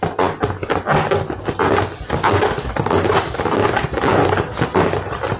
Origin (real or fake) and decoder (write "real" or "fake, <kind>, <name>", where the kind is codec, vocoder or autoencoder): real